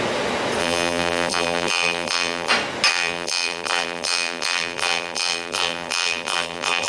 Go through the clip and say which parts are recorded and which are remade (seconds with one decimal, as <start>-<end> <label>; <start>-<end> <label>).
0.0-0.6 recorded; 0.6-2.5 remade; 2.5-2.9 recorded; 2.9-6.9 remade